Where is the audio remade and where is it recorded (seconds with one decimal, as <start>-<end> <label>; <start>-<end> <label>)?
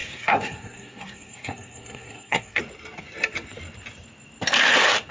0.0-2.6 remade; 2.6-5.1 recorded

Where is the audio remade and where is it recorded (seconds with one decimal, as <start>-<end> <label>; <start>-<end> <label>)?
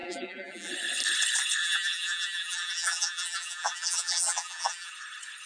0.0-0.7 remade; 0.7-1.6 recorded; 1.6-4.9 remade; 4.9-5.5 recorded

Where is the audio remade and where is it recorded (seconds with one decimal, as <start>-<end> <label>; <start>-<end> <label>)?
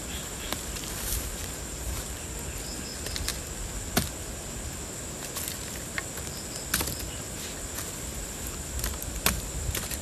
0.0-10.0 recorded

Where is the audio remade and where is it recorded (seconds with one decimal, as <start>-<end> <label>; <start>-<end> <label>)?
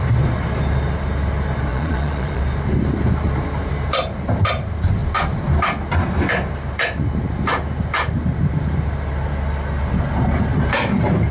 0.0-1.7 recorded; 1.7-2.4 remade; 2.4-11.3 recorded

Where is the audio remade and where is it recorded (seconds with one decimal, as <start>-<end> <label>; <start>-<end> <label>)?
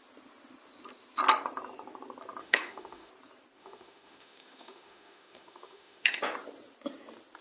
0.0-2.4 recorded; 2.4-3.1 remade; 3.1-3.6 recorded; 3.6-6.2 remade; 6.2-7.4 recorded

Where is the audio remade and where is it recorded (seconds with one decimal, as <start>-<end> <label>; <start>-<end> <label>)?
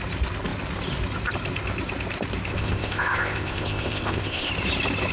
0.0-2.5 recorded; 2.5-4.5 remade; 4.5-5.1 recorded